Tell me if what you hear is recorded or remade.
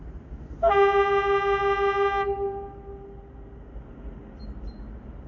recorded